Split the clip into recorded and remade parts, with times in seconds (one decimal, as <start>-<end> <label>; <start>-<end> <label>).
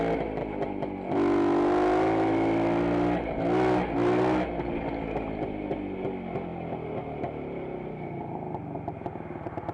0.0-9.7 recorded